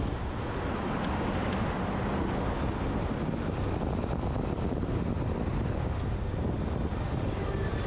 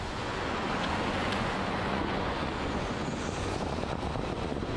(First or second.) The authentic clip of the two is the first